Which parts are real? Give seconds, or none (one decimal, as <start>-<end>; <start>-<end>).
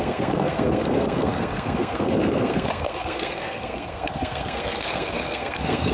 none